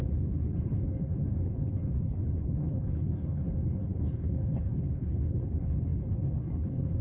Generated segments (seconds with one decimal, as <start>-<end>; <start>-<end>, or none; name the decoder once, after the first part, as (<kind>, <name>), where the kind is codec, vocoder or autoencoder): 0.0-7.0 (codec, HILCodec)